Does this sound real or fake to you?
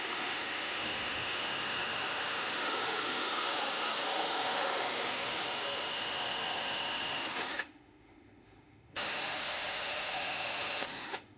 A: fake